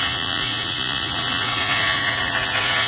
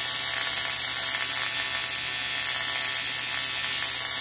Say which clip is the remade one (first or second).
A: first